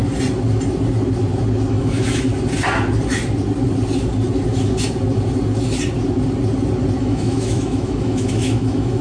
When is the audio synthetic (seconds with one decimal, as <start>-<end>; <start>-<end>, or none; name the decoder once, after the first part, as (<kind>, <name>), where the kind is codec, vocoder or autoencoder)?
1.7-2.3 (autoencoder, DAC-VAE); 7.0-9.0